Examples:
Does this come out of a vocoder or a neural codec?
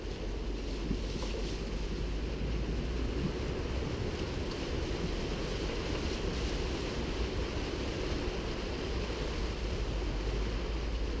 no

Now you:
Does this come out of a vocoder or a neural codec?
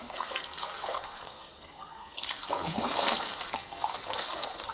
yes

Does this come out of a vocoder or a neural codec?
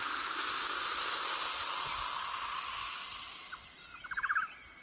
no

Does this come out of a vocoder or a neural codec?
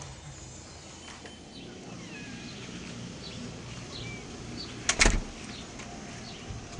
no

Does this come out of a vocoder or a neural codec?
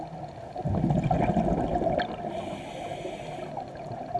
no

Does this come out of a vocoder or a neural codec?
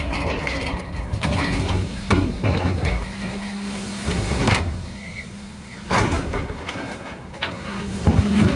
yes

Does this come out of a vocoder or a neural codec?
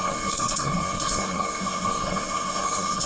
yes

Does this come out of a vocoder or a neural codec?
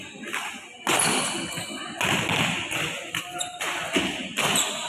no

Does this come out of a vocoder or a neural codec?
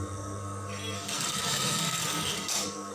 yes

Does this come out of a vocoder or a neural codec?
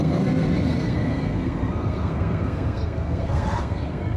yes